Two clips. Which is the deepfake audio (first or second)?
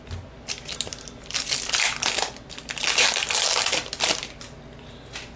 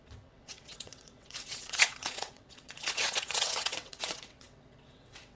second